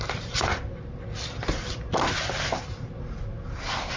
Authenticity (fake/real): real